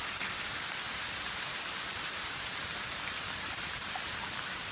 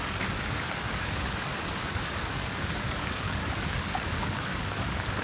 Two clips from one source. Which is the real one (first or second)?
first